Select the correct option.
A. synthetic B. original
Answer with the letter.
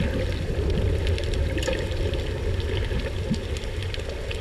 B